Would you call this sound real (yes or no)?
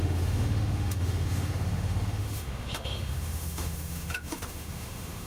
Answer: no